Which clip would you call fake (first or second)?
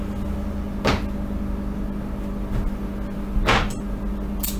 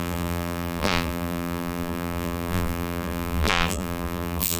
second